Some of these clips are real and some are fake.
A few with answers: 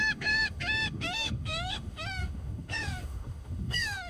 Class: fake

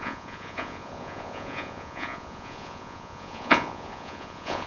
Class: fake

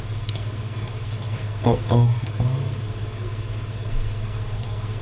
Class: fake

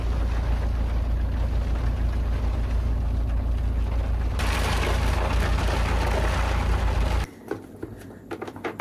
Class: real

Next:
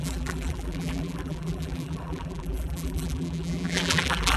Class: fake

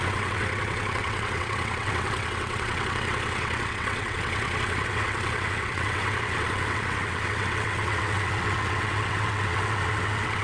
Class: fake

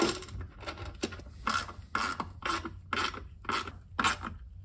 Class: real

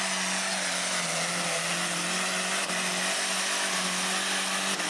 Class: real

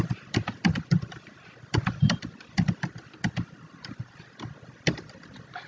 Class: real